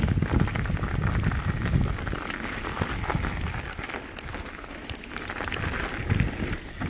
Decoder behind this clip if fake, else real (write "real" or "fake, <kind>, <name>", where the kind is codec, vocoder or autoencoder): real